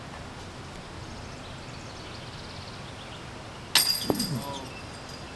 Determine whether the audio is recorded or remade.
recorded